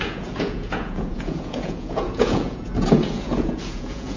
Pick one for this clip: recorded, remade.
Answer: remade